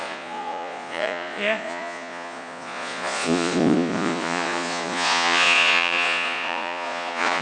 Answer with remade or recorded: remade